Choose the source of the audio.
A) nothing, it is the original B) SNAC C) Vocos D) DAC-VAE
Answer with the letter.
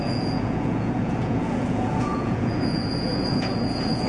C